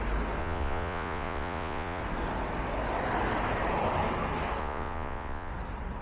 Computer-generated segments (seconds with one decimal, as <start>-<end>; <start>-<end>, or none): 0.4-2.0; 4.6-5.5